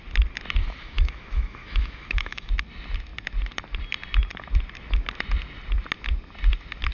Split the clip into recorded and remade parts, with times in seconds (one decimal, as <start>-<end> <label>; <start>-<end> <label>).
0.0-0.6 recorded; 0.6-2.5 remade; 2.5-6.9 recorded